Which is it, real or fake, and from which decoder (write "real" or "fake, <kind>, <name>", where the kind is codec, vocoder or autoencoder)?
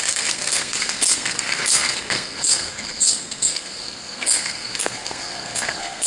fake, codec, SNAC